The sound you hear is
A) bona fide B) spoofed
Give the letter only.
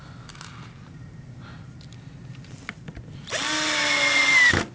A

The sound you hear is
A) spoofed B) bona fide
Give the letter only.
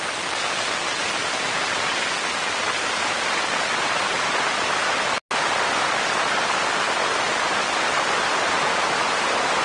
B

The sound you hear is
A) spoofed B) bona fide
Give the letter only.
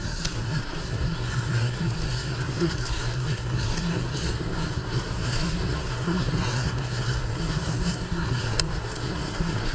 A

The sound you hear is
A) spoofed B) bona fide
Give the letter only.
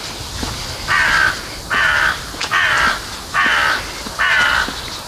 B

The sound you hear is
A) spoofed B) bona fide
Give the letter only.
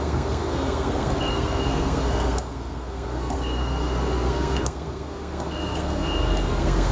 A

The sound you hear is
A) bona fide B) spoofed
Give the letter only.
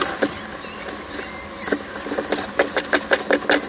A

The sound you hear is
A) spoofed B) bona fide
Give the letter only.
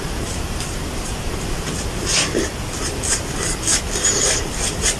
B